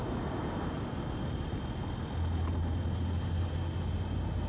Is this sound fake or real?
real